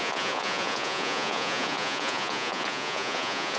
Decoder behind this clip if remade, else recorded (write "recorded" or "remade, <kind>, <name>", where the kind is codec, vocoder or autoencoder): remade, vocoder, Vocos